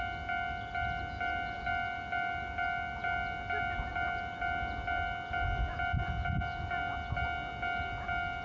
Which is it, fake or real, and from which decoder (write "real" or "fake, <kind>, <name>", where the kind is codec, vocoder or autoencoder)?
real